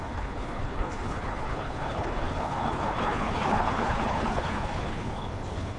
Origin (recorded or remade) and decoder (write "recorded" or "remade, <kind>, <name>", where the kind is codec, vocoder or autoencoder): remade, codec, HILCodec